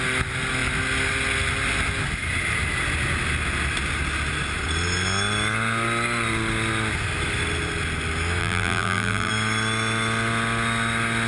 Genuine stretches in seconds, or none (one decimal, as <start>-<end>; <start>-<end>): 0.0-8.4; 9.3-11.3